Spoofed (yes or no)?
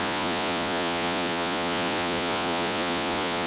yes